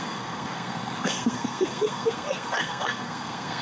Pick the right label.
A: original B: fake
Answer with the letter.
B